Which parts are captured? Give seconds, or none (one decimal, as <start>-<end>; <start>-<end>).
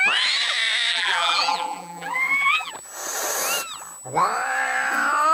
0.0-0.9; 2.7-5.3